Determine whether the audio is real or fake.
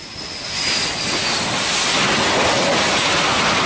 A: real